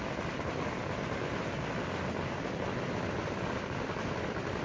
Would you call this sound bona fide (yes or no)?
yes